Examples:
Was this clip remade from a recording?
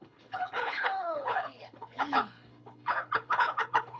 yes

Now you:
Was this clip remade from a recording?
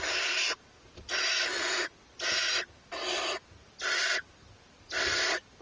no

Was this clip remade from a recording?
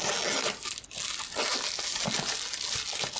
no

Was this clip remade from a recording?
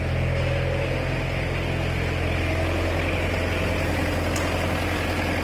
no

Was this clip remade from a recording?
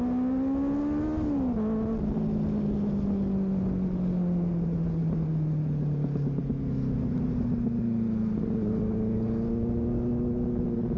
no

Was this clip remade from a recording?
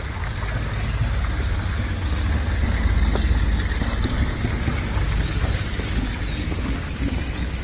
no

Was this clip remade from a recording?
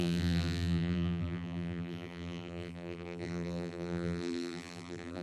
yes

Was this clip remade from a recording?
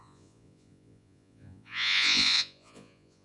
yes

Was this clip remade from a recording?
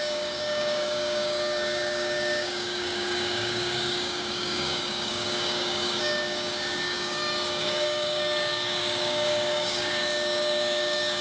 yes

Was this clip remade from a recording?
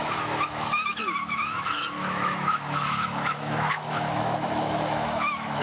yes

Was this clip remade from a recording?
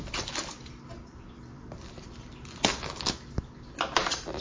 no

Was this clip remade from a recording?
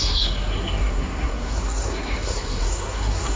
yes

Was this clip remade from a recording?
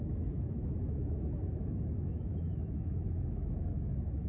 yes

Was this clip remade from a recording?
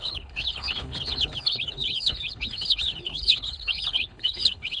yes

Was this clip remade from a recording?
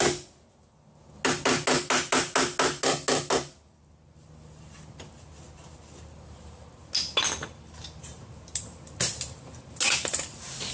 no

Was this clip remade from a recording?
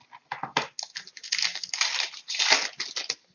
no